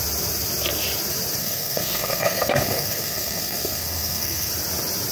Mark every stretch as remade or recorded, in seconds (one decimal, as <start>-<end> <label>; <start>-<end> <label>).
0.0-1.4 recorded; 1.4-4.5 remade; 4.5-5.1 recorded